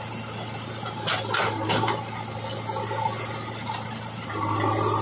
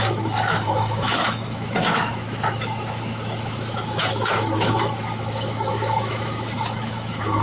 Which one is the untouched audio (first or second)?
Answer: first